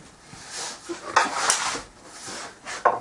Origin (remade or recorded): recorded